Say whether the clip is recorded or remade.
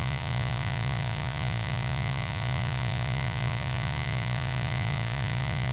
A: remade